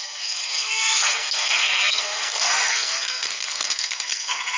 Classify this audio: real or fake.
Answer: fake